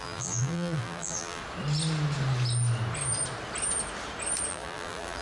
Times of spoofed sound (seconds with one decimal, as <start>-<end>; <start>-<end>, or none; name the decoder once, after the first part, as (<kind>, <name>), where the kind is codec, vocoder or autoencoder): 0.0-1.4 (vocoder, BigVGAN v2); 4.5-5.2